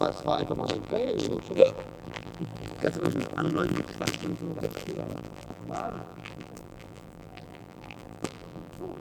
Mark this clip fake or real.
fake